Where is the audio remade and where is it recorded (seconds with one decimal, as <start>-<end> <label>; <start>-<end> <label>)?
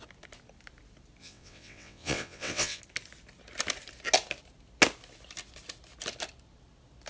0.0-1.2 recorded; 1.2-2.8 remade; 2.8-7.1 recorded